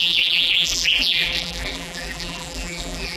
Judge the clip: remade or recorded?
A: remade